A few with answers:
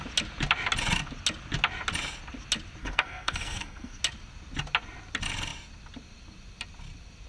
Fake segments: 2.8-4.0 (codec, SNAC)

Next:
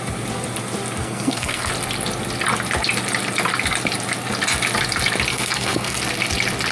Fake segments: 1.0-1.7 (codec, SNAC); 5.3-6.0

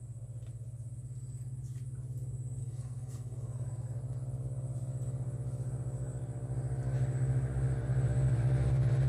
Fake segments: 2.6-4.0 (codec, SNAC)

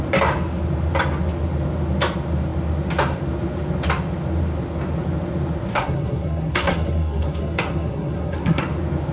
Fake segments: 5.7-8.6 (codec, SNAC)